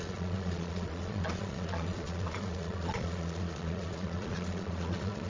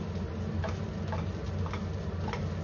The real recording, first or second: second